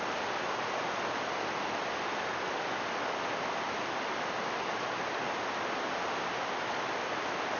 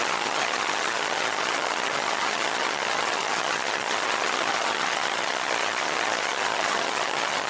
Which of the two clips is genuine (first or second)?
first